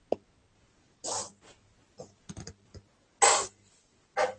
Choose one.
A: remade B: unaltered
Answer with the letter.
B